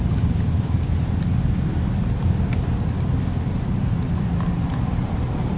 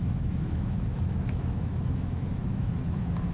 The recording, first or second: first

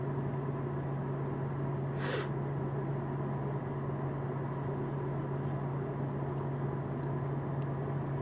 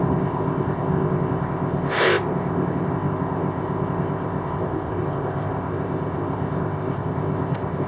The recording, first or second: first